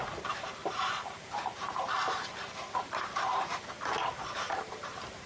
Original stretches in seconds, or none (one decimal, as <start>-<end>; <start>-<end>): none